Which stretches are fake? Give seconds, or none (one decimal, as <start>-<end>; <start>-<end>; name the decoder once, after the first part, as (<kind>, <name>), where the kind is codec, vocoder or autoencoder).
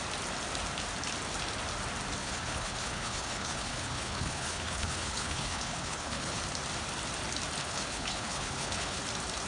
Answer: 2.2-6.4 (codec, HILCodec); 7.6-9.0